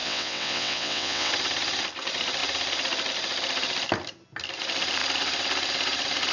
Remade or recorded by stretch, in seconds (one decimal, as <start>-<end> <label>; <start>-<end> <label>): 0.0-1.3 remade; 1.3-6.3 recorded